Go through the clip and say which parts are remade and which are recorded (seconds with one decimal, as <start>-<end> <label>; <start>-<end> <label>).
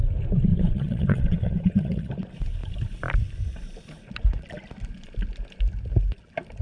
0.0-0.5 recorded; 0.5-2.1 remade; 2.1-6.6 recorded